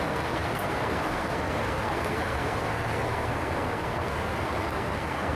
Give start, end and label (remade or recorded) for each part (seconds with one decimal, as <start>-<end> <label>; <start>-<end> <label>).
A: 0.0-5.3 remade